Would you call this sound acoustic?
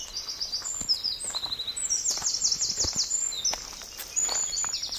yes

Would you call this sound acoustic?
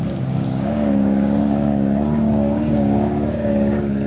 no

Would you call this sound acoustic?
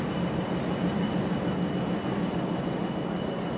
yes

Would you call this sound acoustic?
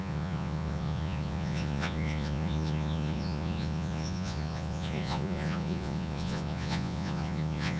no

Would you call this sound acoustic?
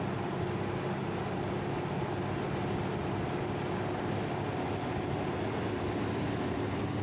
yes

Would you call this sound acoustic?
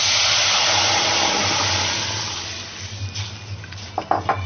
yes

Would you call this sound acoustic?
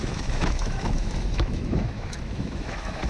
no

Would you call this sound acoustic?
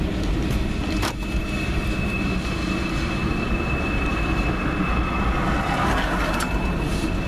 yes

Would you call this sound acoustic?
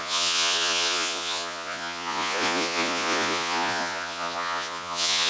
no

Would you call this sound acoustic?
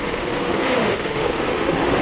no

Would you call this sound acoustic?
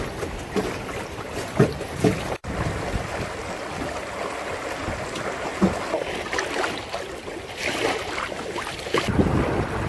yes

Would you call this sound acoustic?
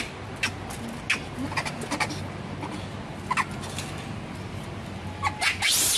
yes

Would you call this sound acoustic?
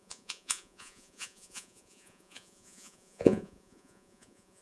no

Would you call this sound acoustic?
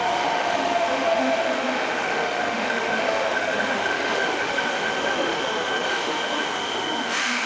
no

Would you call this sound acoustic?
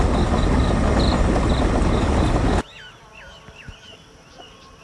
yes